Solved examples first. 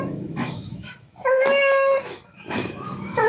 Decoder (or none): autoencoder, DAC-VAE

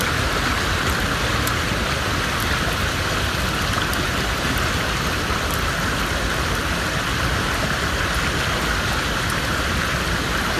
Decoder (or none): none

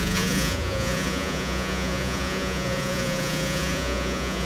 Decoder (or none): vocoder, Vocos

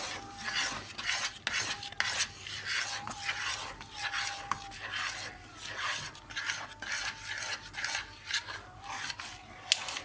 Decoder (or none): none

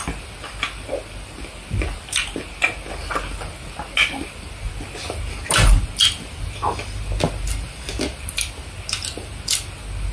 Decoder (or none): none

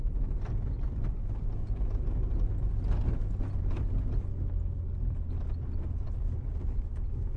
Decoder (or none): none